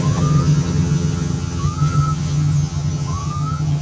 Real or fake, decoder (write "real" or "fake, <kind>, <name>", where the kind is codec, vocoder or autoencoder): fake, vocoder, HiFi-GAN